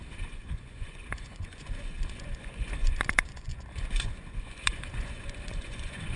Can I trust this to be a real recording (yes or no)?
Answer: no